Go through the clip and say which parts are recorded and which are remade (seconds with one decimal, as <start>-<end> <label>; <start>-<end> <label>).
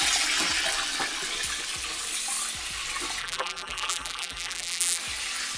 0.0-3.2 recorded; 3.2-5.0 remade; 5.0-5.6 recorded